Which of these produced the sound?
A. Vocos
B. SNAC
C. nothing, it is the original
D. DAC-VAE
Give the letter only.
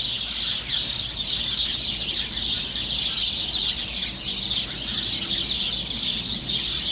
C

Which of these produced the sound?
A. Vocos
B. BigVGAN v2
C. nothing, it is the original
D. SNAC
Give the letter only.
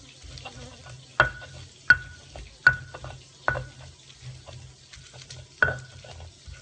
C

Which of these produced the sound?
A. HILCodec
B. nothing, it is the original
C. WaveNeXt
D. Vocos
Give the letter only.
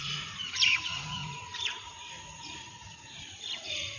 D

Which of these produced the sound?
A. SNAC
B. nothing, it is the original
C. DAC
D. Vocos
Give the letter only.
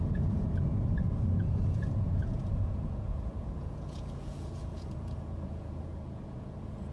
D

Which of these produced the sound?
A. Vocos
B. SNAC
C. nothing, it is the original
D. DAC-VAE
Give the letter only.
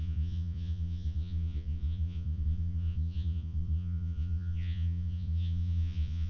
A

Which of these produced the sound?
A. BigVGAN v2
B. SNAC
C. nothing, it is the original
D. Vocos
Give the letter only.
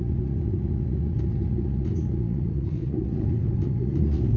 D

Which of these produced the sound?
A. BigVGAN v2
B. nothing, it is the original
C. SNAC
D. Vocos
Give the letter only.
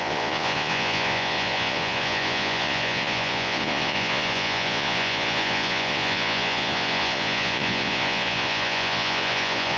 D